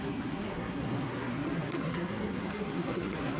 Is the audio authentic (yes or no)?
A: no